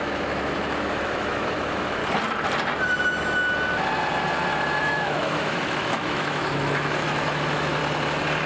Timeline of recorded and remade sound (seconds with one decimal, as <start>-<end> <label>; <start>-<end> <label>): 0.0-2.0 remade; 2.0-4.8 recorded; 4.8-7.8 remade; 7.8-8.5 recorded